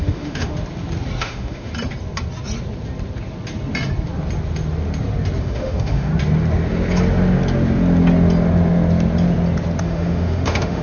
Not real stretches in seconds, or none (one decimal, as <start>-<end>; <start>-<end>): 0.0-0.5; 1.2-1.7; 5.4-6.1; 9.8-10.8